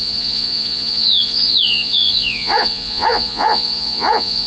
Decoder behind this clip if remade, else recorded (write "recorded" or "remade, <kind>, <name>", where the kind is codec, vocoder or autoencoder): remade, vocoder, Vocos